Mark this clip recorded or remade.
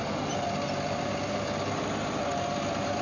recorded